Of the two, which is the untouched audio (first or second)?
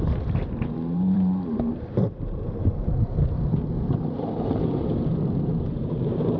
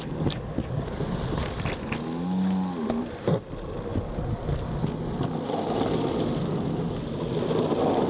second